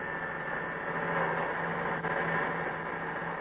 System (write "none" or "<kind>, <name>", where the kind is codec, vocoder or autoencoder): none